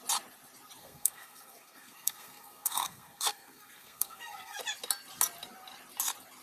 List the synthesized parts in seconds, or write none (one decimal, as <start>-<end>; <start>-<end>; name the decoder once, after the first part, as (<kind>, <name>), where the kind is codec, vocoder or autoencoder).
0.8-4.6 (codec, SNAC)

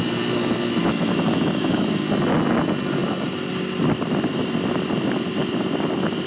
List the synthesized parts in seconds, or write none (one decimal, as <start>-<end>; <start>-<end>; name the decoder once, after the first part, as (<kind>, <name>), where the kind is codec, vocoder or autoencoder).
0.8-2.0 (autoencoder, DAC-VAE)

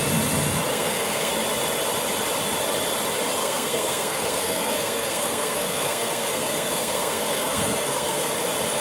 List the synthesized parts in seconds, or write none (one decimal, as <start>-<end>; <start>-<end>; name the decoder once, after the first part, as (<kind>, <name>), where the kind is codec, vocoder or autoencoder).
0.7-1.3 (codec, SNAC); 3.4-8.3

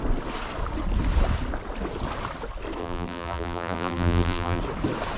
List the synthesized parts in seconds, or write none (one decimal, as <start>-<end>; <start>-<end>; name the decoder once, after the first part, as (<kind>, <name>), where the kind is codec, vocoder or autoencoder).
2.8-4.6 (vocoder, BigVGAN v2)

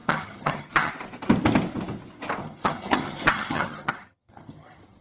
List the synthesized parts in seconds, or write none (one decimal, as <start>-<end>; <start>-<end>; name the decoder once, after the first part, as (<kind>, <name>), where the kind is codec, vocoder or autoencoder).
0.0-0.9 (vocoder, HiFi-GAN); 2.4-5.0

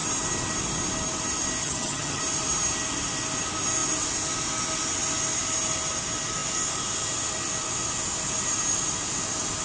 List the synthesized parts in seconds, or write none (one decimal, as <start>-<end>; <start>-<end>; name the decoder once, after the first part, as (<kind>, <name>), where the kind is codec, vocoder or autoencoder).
1.6-2.2 (vocoder, HiFi-GAN)

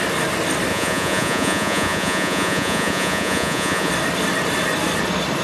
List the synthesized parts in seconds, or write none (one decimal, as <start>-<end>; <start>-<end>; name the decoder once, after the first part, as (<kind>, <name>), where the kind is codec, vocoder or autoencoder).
0.7-3.9 (vocoder, Vocos)